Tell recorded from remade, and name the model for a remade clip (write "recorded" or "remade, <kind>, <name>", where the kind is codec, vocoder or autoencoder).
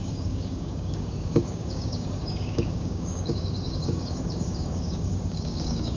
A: remade, codec, DAC